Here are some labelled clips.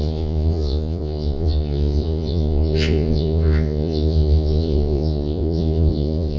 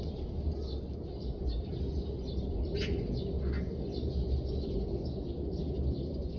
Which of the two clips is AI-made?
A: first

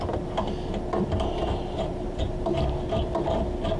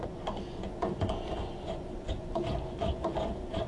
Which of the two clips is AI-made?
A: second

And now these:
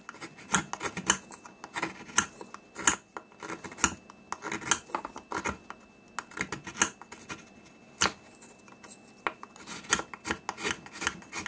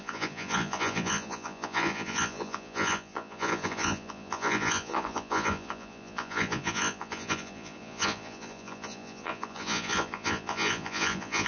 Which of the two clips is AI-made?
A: second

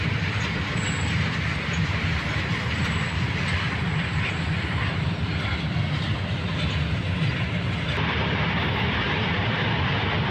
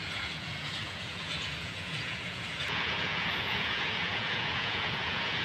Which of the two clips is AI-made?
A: second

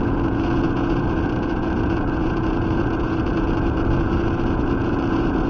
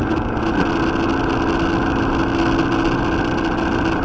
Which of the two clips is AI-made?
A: first